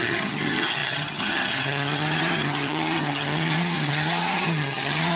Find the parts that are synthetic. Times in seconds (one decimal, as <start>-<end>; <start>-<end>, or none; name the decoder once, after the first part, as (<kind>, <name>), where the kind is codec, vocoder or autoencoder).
0.0-5.2 (vocoder, HiFi-GAN)